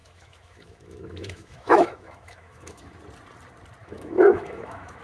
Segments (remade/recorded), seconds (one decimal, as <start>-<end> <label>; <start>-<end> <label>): 0.0-3.0 remade; 3.0-3.8 recorded; 3.8-5.0 remade